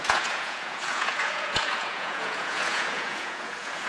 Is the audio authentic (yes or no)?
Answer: no